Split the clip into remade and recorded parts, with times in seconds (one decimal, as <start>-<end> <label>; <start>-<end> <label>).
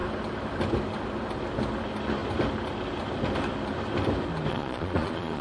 0.0-4.5 recorded; 4.5-5.4 remade